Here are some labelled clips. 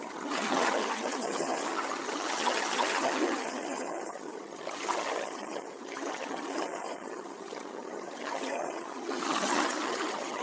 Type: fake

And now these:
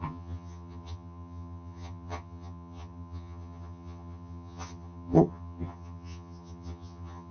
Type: fake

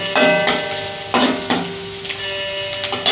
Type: real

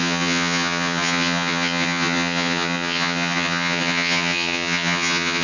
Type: fake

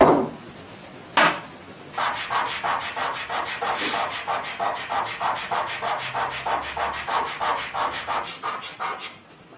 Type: real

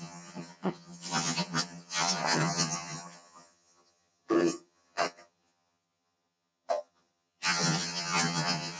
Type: fake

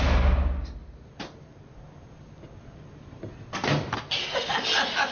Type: real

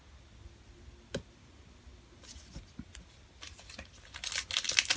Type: real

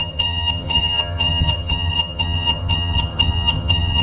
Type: fake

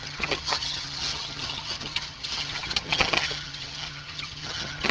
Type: fake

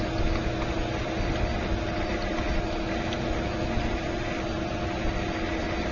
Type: real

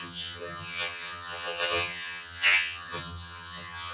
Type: fake